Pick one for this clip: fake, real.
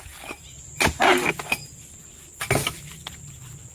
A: real